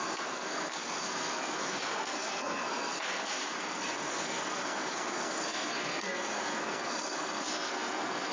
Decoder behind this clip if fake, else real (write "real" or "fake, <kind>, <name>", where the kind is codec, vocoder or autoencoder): fake, codec, SNAC